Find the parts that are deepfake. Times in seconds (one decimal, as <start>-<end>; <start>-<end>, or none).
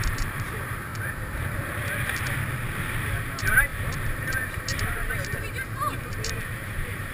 0.0-0.9; 3.0-7.1